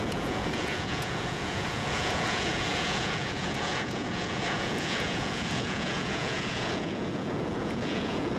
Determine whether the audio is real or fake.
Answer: fake